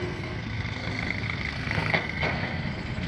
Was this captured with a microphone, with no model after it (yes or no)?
no